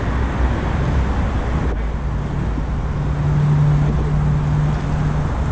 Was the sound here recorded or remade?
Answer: recorded